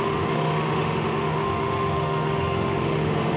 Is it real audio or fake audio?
fake